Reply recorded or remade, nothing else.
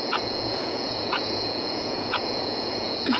remade